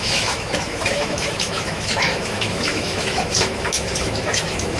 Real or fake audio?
fake